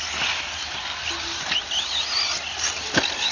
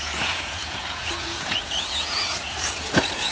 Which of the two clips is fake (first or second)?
second